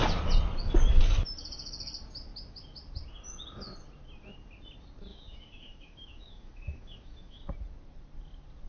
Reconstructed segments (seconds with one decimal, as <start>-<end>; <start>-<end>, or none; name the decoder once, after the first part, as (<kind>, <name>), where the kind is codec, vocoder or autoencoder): 5.1-7.4 (autoencoder, DAC-VAE)